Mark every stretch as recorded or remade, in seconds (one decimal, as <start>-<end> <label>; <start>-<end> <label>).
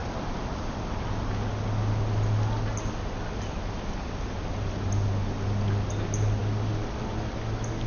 0.0-7.9 recorded